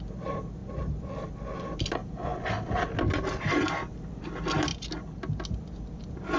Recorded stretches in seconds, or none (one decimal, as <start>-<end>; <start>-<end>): 0.0-6.4